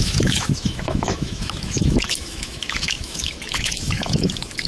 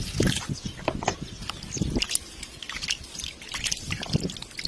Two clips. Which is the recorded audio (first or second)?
second